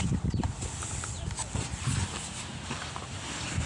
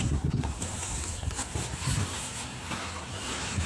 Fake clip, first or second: second